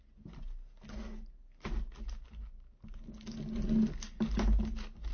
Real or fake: real